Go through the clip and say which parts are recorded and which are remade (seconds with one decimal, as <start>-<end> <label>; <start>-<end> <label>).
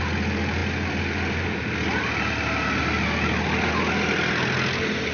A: 0.0-5.1 recorded